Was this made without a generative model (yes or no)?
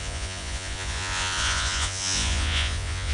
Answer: no